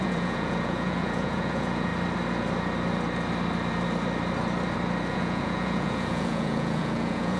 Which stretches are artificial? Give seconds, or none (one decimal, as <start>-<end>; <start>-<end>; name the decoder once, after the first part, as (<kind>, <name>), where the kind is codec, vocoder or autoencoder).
0.0-1.9 (vocoder, Vocos); 5.1-7.4